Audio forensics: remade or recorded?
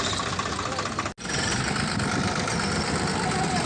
recorded